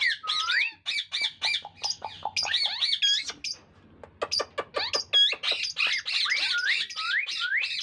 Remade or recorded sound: recorded